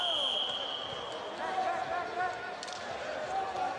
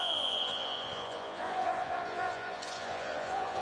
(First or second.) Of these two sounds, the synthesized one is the second